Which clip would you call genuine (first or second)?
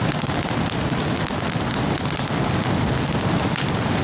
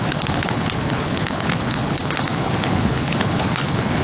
first